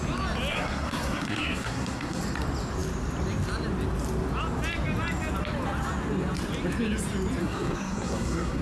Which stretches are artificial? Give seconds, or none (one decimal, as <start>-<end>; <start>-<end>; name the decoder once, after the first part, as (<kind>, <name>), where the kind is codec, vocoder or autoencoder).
0.5-2.2 (codec, SNAC); 7.4-8.6